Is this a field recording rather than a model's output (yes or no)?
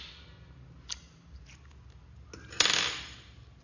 yes